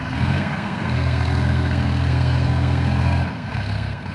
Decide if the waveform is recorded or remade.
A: remade